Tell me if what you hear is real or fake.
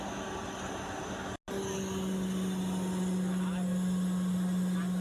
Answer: real